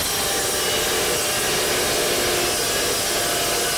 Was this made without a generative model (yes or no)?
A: yes